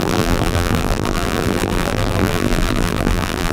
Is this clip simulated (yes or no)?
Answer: yes